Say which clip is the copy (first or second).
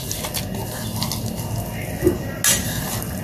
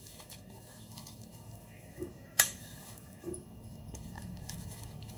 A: second